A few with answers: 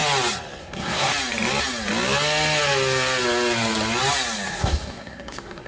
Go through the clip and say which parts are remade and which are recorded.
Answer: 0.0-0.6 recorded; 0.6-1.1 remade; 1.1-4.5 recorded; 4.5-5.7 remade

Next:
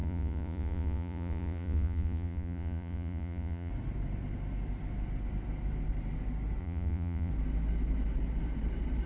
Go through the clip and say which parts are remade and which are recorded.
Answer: 0.0-3.7 remade; 3.7-6.6 recorded; 6.6-7.3 remade; 7.3-9.1 recorded

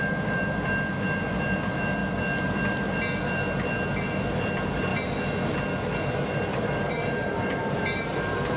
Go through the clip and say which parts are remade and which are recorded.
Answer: 0.0-4.9 remade; 4.9-6.1 recorded; 6.1-8.6 remade